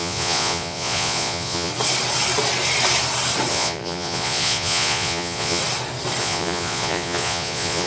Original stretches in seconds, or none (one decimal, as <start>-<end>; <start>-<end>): 1.7-3.5; 5.6-6.2